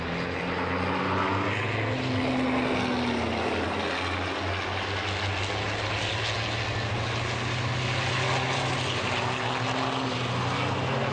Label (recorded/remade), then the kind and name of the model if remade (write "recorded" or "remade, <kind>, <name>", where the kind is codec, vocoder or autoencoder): recorded